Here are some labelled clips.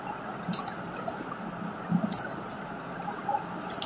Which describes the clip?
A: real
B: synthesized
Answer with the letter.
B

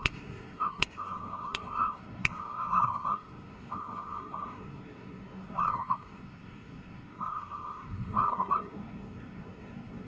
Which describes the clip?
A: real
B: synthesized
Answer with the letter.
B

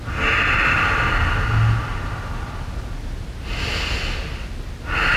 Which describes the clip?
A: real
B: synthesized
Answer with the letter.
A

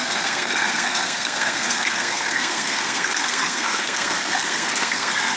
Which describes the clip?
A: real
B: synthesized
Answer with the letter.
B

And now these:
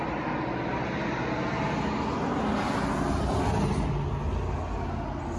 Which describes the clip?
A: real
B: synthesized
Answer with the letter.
A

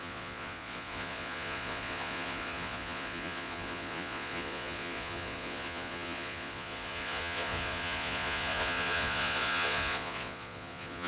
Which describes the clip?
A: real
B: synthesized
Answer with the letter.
B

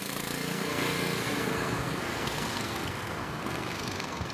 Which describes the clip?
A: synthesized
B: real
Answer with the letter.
A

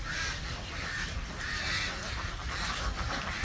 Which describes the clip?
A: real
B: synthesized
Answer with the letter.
A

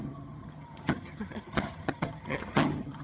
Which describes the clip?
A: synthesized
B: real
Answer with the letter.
A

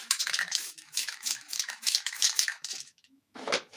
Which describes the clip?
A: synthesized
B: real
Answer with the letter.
A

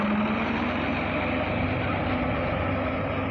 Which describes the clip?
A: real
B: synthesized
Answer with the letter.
A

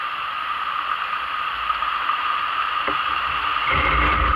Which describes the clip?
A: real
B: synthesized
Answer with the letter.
A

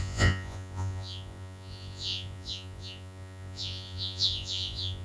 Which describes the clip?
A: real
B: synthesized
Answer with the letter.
B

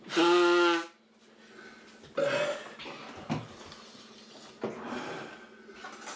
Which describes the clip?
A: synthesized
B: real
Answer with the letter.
B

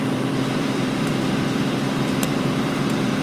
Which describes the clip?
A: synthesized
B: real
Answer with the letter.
A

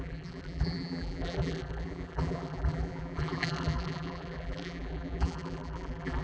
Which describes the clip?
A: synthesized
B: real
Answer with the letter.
A